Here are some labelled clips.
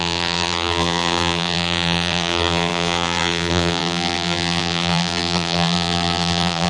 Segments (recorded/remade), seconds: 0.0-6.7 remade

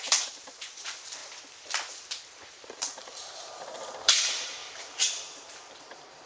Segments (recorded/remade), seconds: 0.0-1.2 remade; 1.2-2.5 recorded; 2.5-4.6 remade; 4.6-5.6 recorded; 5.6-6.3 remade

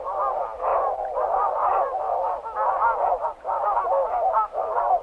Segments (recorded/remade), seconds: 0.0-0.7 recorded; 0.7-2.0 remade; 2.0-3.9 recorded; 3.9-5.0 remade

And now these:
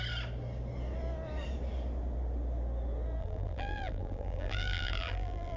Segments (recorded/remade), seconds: 0.0-3.2 recorded; 3.2-5.6 remade

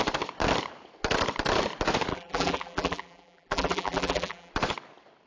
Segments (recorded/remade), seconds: 0.0-2.1 recorded; 2.1-4.5 remade; 4.5-5.3 recorded